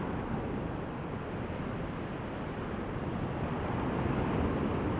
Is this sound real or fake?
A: real